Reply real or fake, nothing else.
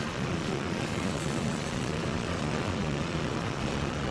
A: fake